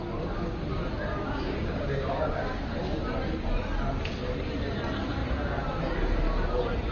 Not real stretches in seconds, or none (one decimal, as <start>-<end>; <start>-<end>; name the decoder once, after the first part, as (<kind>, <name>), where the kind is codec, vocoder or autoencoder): 1.1-2.6 (codec, DAC)